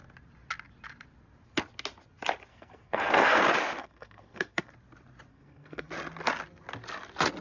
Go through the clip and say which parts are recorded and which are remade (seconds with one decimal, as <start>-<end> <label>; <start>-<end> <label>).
0.0-2.5 recorded; 2.5-3.4 remade; 3.4-3.8 recorded; 3.8-4.7 remade; 4.7-5.3 recorded; 5.3-5.9 remade; 5.9-7.4 recorded